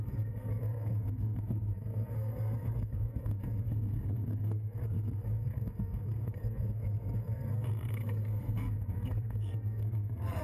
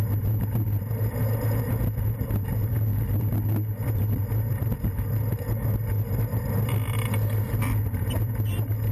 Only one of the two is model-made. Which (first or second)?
first